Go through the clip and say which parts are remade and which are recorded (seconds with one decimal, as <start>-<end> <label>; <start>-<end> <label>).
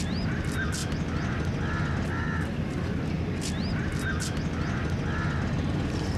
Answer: 0.0-6.2 recorded